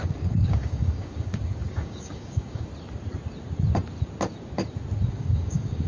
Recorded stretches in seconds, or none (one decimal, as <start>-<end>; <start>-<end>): 2.7-5.1